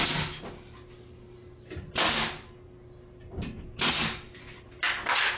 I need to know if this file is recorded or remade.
recorded